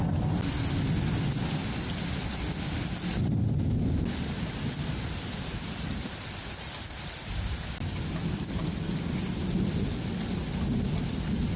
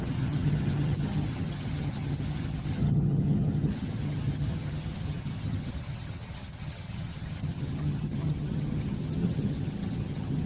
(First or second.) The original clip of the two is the first